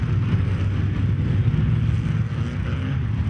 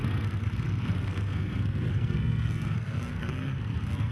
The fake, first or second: second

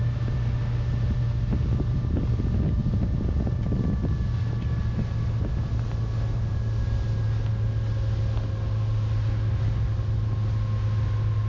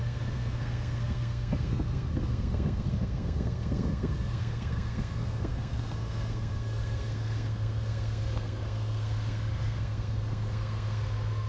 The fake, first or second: second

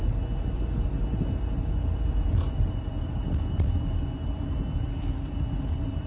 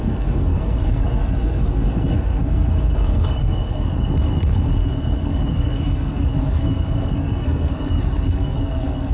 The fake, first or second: second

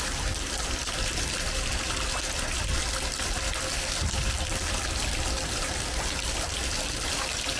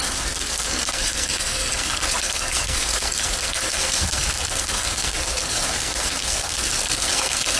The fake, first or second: second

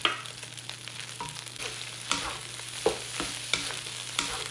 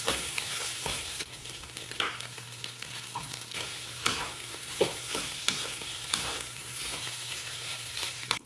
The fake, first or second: second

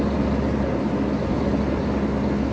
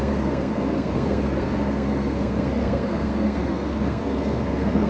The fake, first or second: second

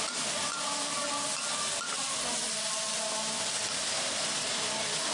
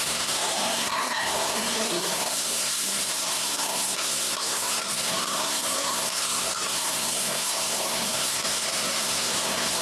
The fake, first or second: second